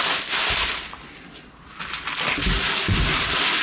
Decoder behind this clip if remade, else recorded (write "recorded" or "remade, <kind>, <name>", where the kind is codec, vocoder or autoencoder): recorded